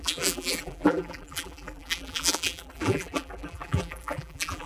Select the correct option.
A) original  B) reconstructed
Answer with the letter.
B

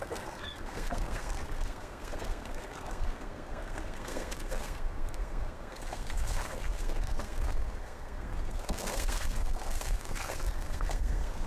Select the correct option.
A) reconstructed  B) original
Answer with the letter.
A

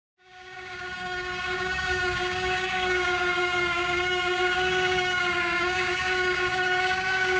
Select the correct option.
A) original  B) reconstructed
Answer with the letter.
B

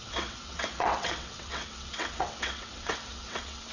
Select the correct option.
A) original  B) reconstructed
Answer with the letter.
B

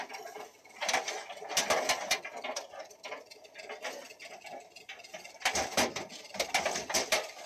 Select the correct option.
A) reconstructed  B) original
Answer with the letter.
B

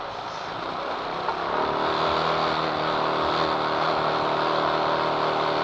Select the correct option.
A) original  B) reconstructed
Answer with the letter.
A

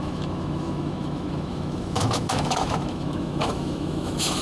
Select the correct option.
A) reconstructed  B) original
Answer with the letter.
A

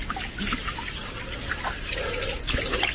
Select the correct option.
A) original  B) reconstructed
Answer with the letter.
A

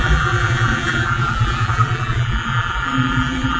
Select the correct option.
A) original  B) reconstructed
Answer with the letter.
B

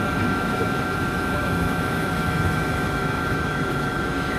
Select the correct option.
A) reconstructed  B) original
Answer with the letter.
A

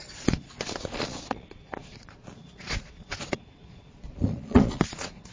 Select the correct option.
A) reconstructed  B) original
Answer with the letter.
A